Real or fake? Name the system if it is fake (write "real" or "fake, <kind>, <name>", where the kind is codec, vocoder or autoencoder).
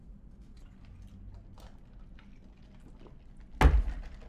real